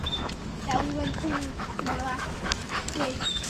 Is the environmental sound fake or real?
fake